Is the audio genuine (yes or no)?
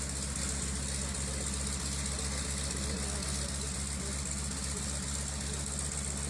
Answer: yes